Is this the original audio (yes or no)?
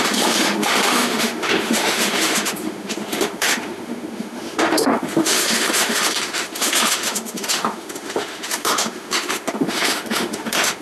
no